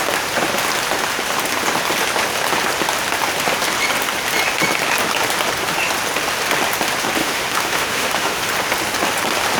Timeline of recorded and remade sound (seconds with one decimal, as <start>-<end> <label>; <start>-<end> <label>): 0.0-7.2 recorded; 7.2-8.4 remade; 8.4-9.6 recorded